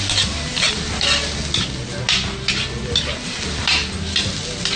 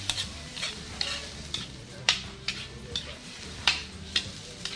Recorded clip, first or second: first